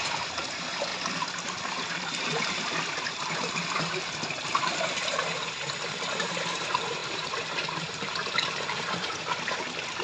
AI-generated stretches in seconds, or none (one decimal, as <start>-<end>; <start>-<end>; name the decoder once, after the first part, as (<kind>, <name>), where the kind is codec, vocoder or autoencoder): 0.0-0.9 (vocoder, BigVGAN v2); 1.9-10.0